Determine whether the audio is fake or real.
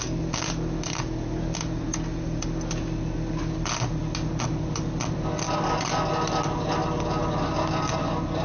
real